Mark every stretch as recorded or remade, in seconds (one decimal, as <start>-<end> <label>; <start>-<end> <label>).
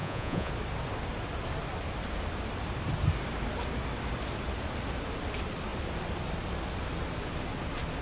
0.0-0.5 remade; 0.5-8.0 recorded